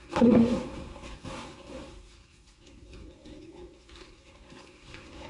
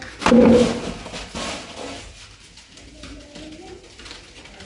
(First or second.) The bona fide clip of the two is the second